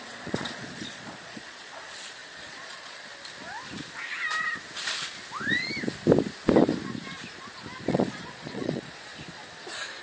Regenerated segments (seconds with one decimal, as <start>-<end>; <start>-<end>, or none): 0.0-3.1; 7.9-9.1